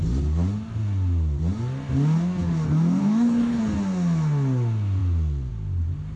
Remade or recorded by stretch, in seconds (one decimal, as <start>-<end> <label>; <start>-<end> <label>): 0.0-3.0 recorded; 3.0-3.6 remade; 3.6-6.2 recorded